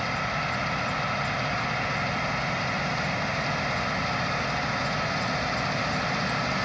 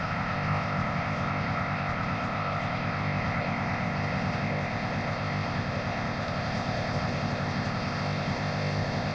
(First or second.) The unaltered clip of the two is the first